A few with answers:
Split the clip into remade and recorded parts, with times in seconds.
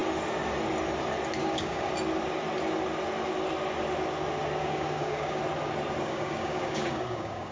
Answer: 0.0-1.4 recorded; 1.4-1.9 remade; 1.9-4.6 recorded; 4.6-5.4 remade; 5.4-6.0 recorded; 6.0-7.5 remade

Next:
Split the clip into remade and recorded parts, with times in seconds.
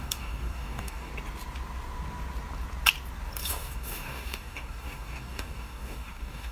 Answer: 0.0-1.1 remade; 1.1-3.5 recorded; 3.5-6.5 remade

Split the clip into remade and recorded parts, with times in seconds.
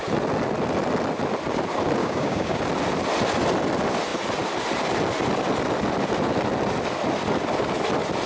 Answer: 0.0-2.0 recorded; 2.0-2.6 remade; 2.6-8.3 recorded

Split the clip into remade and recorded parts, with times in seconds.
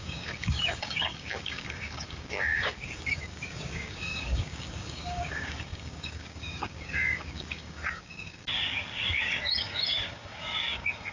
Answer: 0.0-11.1 remade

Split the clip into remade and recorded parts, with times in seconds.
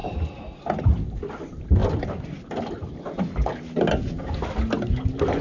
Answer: 0.0-5.4 recorded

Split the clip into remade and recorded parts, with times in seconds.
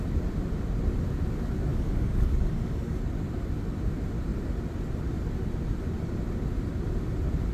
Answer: 0.0-1.7 recorded; 1.7-3.0 remade; 3.0-7.5 recorded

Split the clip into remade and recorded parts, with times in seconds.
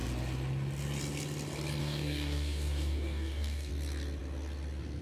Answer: 0.0-1.8 recorded; 1.8-3.7 remade; 3.7-5.0 recorded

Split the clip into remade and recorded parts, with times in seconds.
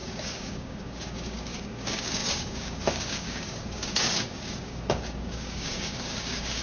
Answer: 0.0-6.6 remade